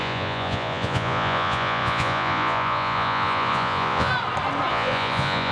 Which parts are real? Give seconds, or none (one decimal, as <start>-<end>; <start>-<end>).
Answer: 4.1-4.7